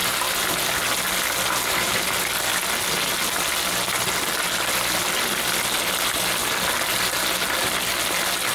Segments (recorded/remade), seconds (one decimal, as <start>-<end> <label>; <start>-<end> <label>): 0.0-8.5 recorded